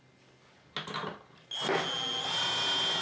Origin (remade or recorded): recorded